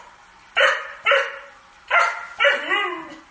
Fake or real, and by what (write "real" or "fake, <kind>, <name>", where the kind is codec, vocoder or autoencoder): real